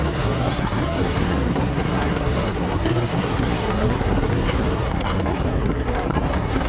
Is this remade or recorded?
remade